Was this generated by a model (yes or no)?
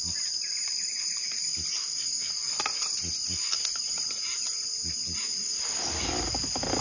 no